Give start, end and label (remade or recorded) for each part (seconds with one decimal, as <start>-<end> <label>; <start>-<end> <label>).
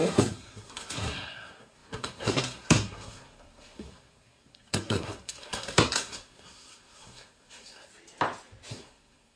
0.0-7.9 remade; 7.9-8.7 recorded; 8.7-9.4 remade